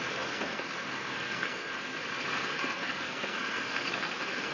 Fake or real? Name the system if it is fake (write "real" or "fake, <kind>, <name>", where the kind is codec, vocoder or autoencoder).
fake, codec, SNAC